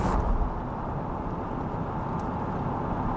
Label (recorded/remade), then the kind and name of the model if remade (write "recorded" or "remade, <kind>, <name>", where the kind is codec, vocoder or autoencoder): recorded